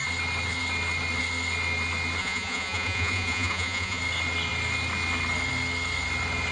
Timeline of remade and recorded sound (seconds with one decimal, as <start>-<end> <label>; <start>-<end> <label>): 0.0-2.2 recorded; 2.2-4.0 remade; 4.0-6.5 recorded